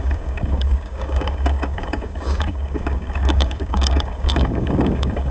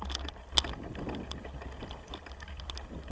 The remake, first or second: first